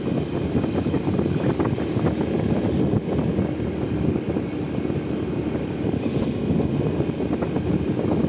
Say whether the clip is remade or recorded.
recorded